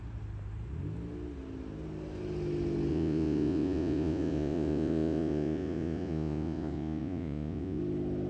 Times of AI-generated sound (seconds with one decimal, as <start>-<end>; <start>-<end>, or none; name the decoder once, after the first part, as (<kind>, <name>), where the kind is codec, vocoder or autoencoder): 2.9-7.8 (vocoder, Vocos)